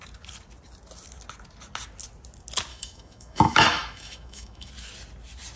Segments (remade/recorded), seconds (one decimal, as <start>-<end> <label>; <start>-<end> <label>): 0.0-2.7 recorded; 2.7-4.7 remade; 4.7-5.6 recorded